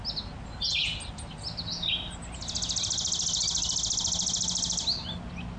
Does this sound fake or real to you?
real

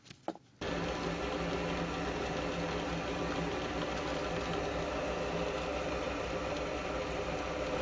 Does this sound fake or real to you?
real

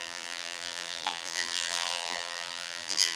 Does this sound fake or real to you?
fake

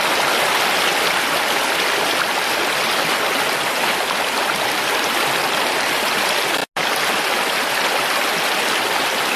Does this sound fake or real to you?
real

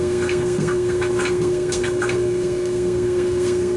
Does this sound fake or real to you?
fake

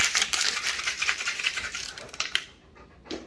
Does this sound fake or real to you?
fake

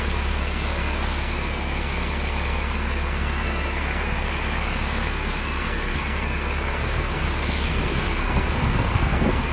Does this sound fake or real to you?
fake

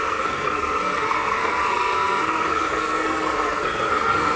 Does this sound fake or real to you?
fake